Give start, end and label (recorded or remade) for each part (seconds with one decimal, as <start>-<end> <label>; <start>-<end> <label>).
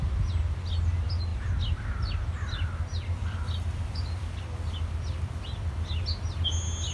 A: 0.0-6.9 recorded